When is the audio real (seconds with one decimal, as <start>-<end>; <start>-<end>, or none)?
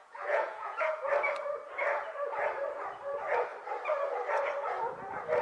1.1-5.4